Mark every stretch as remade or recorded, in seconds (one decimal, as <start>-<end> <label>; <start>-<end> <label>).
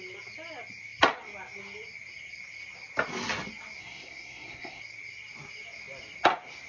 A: 0.0-3.8 recorded; 3.8-4.8 remade; 4.8-6.7 recorded